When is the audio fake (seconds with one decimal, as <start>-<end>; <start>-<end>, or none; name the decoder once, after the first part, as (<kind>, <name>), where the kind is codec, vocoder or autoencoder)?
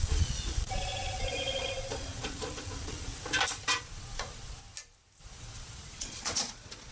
0.0-3.1 (vocoder, Vocos); 3.8-4.6; 5.2-6.9